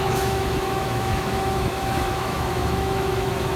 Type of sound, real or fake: fake